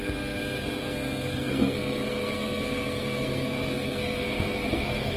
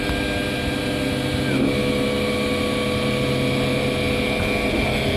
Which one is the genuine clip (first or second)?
second